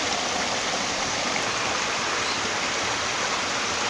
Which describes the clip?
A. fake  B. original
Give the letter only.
B